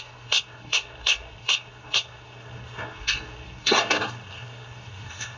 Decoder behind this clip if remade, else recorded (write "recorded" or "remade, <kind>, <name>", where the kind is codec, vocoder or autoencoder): remade, codec, SNAC